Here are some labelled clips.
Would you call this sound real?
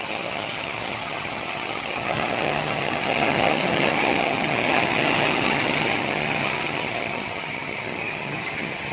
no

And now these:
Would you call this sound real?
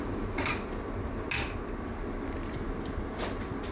yes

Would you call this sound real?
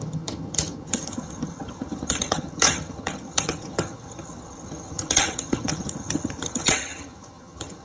no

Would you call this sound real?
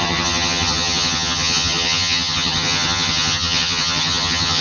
no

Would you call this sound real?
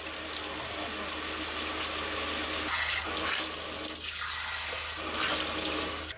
yes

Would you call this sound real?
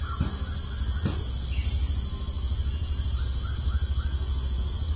yes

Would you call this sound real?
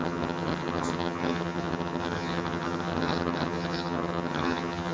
no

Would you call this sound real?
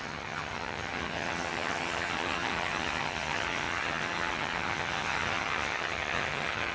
no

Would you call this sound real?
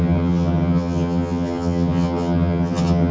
no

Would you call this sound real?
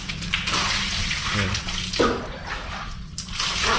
yes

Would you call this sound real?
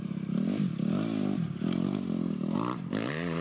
yes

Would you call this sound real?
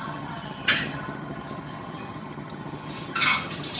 no